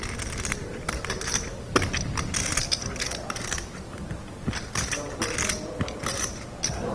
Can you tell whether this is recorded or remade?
recorded